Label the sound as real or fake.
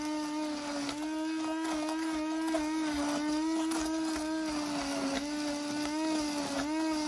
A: real